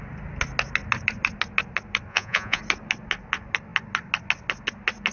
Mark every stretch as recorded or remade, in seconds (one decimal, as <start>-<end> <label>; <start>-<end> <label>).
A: 0.0-2.1 recorded; 2.1-2.6 remade; 2.6-5.1 recorded